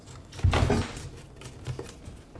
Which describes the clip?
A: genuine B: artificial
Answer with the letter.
A